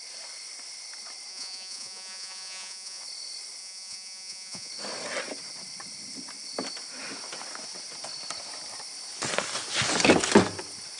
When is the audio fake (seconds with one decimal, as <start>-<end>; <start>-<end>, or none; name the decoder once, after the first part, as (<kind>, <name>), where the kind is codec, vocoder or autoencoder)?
1.3-3.0 (vocoder, Vocos); 3.6-4.7